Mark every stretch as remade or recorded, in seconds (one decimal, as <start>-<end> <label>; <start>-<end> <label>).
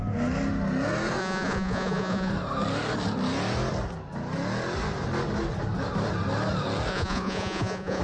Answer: 0.0-1.2 recorded; 1.2-2.3 remade; 2.3-6.9 recorded; 6.9-8.0 remade